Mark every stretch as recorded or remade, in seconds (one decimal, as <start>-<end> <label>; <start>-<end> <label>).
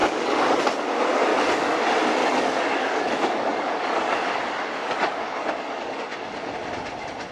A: 0.0-0.6 remade; 0.6-1.3 recorded; 1.3-1.8 remade; 1.8-2.2 recorded; 2.2-6.5 remade; 6.5-7.3 recorded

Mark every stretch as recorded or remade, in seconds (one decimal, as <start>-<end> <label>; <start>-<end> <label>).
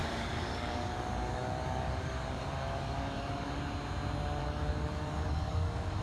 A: 0.0-3.6 remade; 3.6-4.4 recorded; 4.4-6.0 remade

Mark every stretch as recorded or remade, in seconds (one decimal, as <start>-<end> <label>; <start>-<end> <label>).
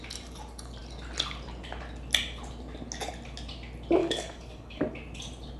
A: 0.0-4.0 recorded; 4.0-4.8 remade; 4.8-5.6 recorded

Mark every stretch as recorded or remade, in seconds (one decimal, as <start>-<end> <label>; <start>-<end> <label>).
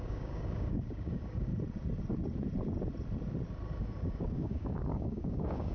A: 0.0-1.5 remade; 1.5-3.8 recorded; 3.8-5.7 remade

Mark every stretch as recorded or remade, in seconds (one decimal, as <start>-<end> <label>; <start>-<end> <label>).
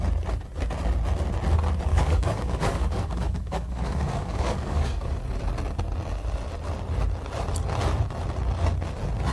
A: 0.0-1.9 recorded; 1.9-5.1 remade; 5.1-9.3 recorded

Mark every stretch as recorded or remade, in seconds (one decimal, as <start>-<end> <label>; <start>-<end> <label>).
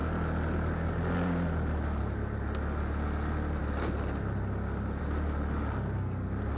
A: 0.0-6.6 recorded